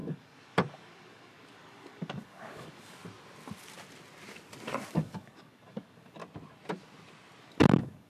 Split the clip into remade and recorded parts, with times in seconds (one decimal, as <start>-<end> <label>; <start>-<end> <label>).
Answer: 0.0-3.0 remade; 3.0-4.9 recorded; 4.9-6.2 remade; 6.2-7.4 recorded; 7.4-8.1 remade